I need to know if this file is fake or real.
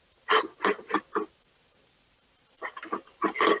real